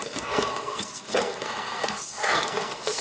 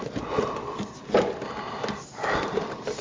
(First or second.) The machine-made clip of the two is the first